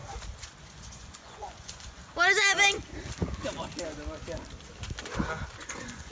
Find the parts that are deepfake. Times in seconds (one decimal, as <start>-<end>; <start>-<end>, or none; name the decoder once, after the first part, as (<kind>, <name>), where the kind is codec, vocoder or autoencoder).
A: 0.6-2.0 (vocoder, Vocos); 5.6-6.1